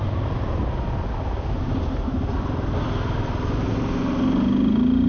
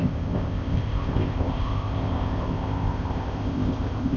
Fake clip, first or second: second